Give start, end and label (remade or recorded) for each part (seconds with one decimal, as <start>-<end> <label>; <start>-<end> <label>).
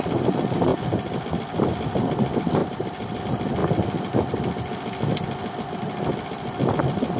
0.0-2.6 recorded; 2.6-3.2 remade; 3.2-7.2 recorded